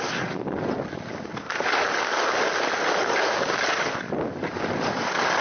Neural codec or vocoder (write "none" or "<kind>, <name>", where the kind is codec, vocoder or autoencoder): none